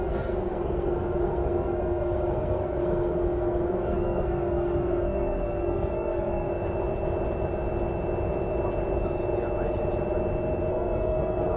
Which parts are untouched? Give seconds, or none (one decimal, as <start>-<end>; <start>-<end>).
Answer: 6.5-10.7